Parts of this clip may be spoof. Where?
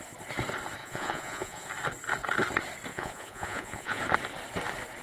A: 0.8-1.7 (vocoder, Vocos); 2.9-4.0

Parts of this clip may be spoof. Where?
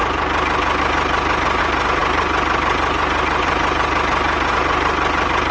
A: none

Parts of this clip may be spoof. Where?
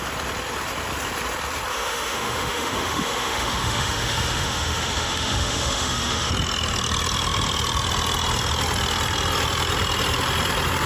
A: 1.7-6.3 (autoencoder, DAC-VAE)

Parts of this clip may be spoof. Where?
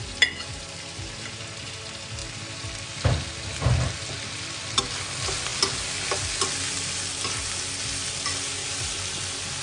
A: none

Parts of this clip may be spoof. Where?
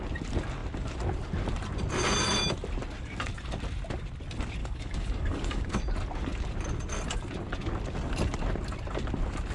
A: 4.6-5.8 (codec, DAC)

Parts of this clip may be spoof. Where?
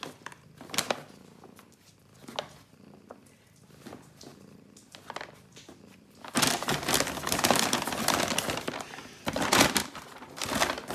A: 9.8-10.3 (vocoder, BigVGAN v2)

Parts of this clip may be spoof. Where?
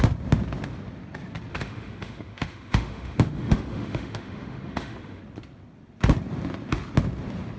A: 1.5-5.2 (autoencoder, DAC-VAE)